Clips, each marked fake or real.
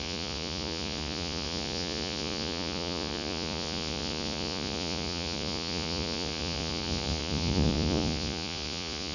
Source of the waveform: fake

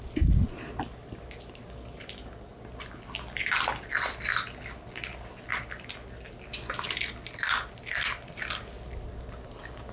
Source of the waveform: real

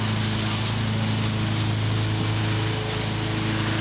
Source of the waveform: real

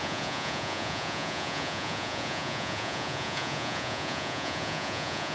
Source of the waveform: fake